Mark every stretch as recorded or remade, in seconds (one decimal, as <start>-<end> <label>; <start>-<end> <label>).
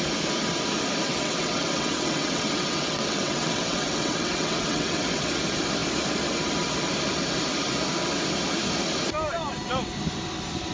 0.0-1.1 recorded; 1.1-5.3 remade; 5.3-10.7 recorded